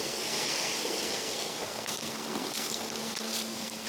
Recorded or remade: remade